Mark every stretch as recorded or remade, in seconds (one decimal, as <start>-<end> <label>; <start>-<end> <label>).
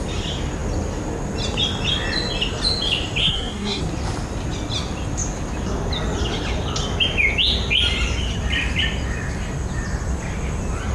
0.0-3.2 recorded; 3.2-3.8 remade; 3.8-10.9 recorded